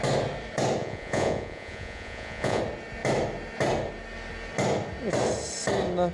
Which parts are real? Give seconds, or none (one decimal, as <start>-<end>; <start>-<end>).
0.0-0.8; 2.6-6.1